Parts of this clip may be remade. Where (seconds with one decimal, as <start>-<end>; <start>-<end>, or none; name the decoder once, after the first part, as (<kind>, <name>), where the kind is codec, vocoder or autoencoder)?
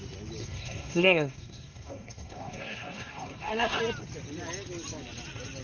0.4-3.8 (codec, SNAC)